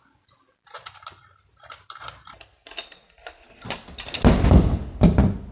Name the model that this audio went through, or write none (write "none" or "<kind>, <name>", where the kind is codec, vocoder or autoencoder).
none